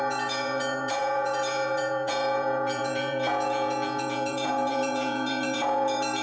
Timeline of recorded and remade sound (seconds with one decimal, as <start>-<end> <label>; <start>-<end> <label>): 0.0-6.2 remade